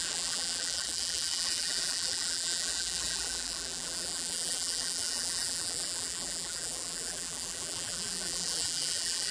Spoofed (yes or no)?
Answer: yes